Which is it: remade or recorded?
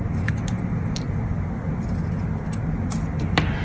recorded